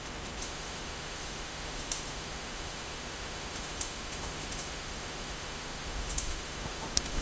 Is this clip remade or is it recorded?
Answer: remade